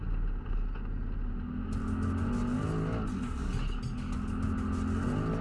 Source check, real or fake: real